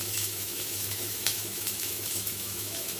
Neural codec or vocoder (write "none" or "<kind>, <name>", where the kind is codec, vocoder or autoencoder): autoencoder, DAC-VAE